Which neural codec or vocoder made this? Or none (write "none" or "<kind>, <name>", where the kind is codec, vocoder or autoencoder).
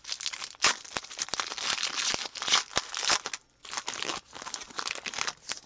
none